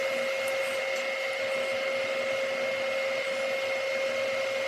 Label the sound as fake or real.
real